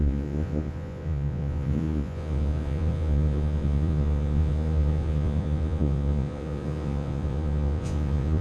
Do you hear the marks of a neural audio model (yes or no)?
yes